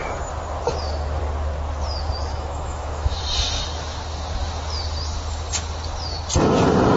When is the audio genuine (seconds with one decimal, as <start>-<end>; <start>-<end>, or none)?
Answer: 0.0-2.3; 3.2-7.0